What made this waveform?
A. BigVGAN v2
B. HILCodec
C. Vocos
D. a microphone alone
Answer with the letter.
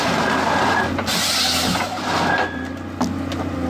D